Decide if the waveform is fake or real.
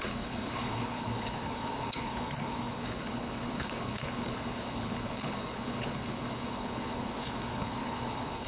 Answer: fake